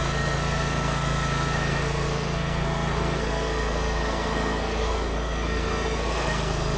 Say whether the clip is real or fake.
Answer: fake